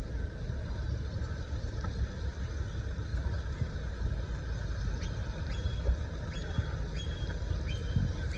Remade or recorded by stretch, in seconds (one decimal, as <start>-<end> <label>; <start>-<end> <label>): 0.0-8.4 recorded